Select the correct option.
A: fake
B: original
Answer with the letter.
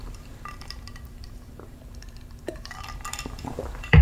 A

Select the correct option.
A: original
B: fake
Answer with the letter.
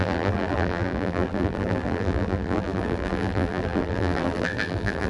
B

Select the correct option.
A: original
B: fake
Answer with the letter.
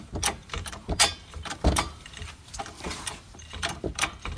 B